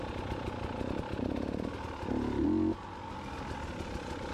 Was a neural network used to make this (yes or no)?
no